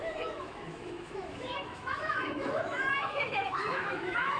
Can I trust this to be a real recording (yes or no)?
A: no